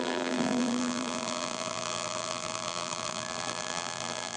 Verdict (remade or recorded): remade